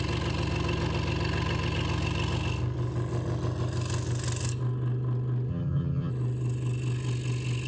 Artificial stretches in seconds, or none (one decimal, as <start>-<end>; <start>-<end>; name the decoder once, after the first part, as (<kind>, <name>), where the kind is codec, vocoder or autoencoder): 5.5-6.1 (vocoder, HiFi-GAN)

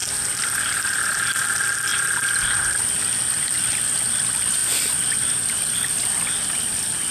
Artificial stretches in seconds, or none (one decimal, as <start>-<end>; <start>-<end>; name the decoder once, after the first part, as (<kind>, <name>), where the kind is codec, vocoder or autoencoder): 1.3-1.9 (vocoder, BigVGAN v2); 2.8-4.6

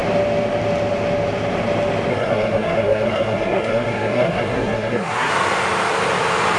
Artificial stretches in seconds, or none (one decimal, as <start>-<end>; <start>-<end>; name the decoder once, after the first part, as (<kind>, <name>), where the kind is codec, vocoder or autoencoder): 2.1-5.3 (codec, SNAC)